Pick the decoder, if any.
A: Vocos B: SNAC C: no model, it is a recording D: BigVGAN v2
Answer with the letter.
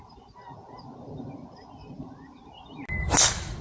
C